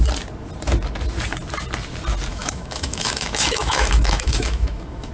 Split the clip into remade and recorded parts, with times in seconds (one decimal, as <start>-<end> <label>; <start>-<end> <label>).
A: 0.0-2.3 recorded; 2.3-5.1 remade

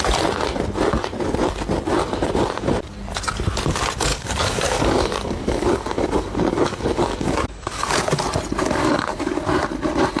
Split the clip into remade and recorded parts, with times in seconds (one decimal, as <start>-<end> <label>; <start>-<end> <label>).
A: 0.0-4.1 recorded; 4.1-8.2 remade; 8.2-8.6 recorded; 8.6-9.4 remade; 9.4-10.2 recorded

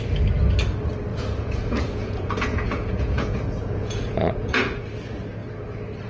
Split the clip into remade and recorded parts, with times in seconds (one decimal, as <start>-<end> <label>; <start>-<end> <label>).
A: 0.0-1.1 recorded; 1.1-4.8 remade; 4.8-6.1 recorded